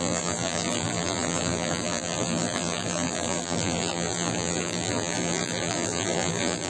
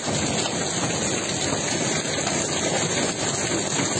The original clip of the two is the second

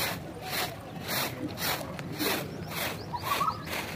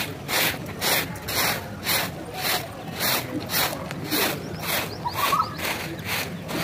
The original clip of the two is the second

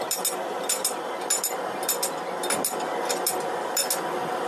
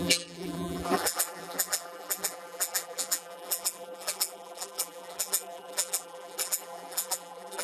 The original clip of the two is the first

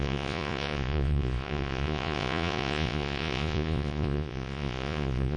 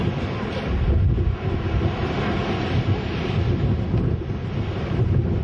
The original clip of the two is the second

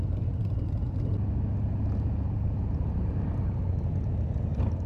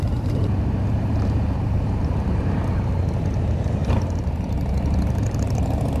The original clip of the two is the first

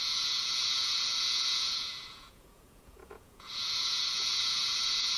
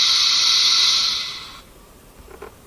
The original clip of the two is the second